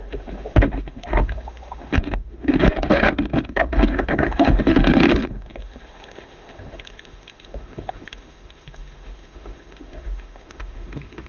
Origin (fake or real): fake